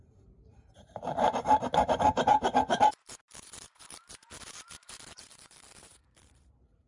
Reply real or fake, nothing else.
fake